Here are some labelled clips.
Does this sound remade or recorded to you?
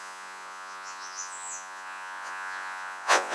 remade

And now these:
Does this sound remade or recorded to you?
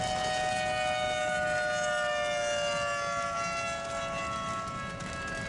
recorded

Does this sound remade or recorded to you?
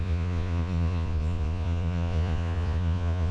remade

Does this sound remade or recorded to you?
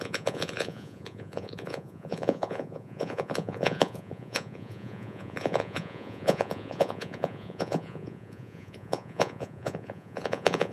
remade